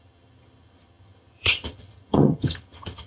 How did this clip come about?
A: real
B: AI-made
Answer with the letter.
B